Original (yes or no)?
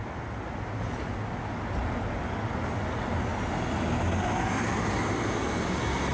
yes